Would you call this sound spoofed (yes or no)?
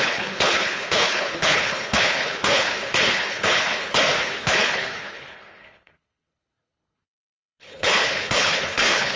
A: yes